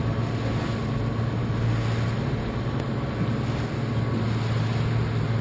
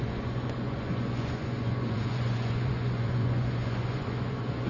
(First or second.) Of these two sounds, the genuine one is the first